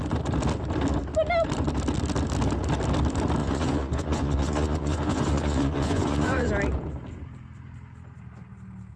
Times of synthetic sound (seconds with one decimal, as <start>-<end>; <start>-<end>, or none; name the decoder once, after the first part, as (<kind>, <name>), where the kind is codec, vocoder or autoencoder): 3.4-6.5 (vocoder, Vocos)